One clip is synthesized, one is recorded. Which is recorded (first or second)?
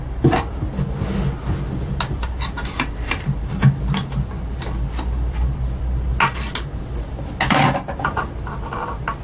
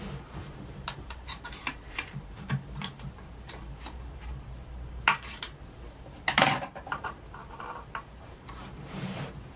first